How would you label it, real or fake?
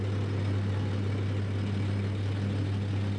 real